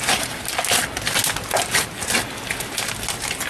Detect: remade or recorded recorded